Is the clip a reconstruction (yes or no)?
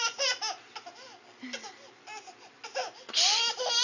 no